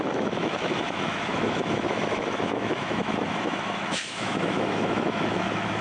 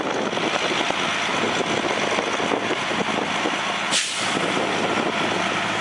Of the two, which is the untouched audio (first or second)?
second